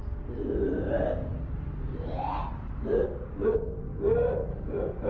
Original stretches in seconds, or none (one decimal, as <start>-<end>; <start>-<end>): 0.0-5.1